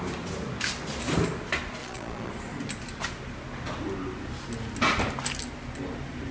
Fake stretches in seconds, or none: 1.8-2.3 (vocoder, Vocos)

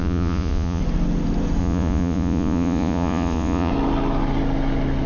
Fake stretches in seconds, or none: 0.0-0.8 (vocoder, Vocos); 1.6-3.7

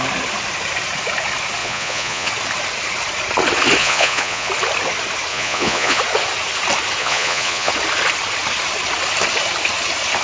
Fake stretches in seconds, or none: 1.6-2.3 (vocoder, Vocos); 3.8-4.5; 5.3-6.0; 7.0-7.7

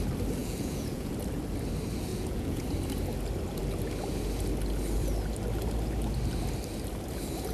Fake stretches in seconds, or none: 0.4-1.1 (vocoder, Vocos); 2.1-2.6

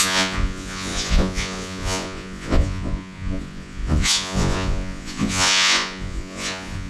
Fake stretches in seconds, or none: 0.0-6.9 (vocoder, Vocos)